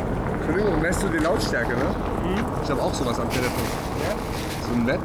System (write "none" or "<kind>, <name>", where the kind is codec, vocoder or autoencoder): none